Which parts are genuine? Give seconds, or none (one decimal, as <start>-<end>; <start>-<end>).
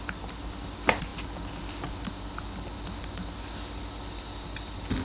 0.0-5.0